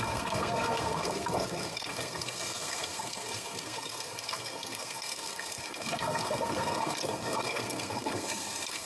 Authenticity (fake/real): fake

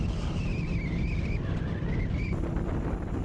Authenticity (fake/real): real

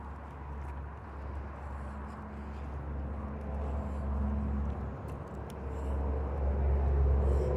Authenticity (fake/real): real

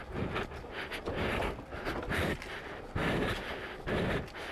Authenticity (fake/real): real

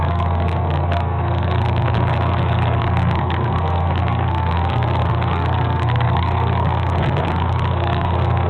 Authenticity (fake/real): fake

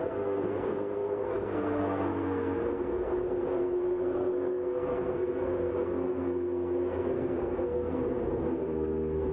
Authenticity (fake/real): fake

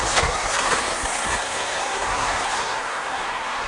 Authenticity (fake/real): fake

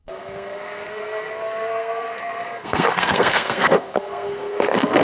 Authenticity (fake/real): fake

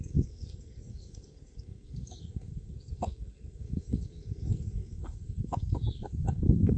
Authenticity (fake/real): fake